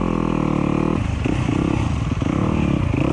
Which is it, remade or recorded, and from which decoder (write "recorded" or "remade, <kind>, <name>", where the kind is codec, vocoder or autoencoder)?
recorded